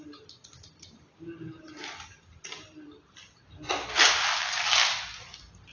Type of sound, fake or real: real